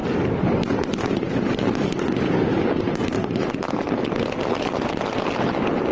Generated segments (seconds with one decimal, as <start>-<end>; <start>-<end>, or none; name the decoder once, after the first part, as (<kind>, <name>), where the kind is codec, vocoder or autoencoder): none